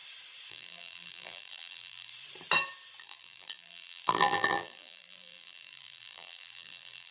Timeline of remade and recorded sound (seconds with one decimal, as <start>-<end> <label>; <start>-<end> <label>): 0.0-0.5 recorded; 0.5-2.1 remade; 2.1-3.0 recorded; 3.0-7.1 remade